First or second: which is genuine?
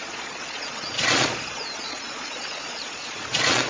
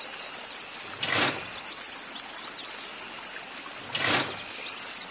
second